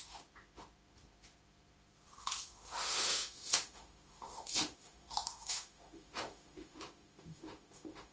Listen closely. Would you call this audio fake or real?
fake